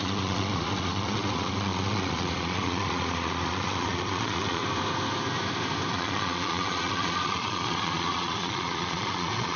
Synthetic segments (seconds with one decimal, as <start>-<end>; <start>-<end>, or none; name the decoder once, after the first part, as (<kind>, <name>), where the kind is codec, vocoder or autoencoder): 0.0-4.6 (vocoder, Vocos); 5.9-9.6

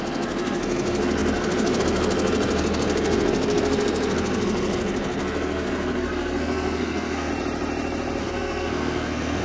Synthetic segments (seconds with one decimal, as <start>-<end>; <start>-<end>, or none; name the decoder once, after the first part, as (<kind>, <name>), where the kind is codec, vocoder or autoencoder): 0.0-7.3 (codec, SNAC); 8.2-9.4

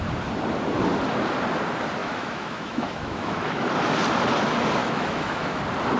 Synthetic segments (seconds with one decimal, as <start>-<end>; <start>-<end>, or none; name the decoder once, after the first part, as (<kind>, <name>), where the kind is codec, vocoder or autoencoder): 2.0-3.7 (autoencoder, DAC-VAE); 4.8-5.6

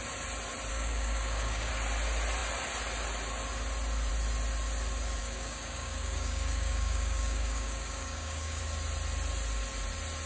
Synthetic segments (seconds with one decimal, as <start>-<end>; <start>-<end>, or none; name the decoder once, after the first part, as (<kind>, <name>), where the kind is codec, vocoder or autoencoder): 0.7-1.7 (codec, DAC); 5.2-8.6

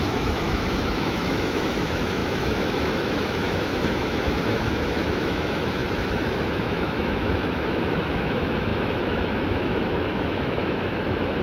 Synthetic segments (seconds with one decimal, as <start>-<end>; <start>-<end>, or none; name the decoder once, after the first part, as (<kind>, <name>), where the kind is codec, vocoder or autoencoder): 0.0-11.4 (autoencoder, DAC-VAE)

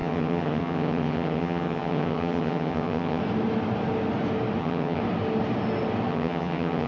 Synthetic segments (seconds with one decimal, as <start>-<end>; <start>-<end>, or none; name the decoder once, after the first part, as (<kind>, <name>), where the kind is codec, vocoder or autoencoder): 0.0-3.2 (vocoder, HiFi-GAN); 4.6-5.0; 6.1-6.9

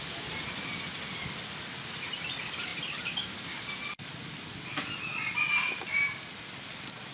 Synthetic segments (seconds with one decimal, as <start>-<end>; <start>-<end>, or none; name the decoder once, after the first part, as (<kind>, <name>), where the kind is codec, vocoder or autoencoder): none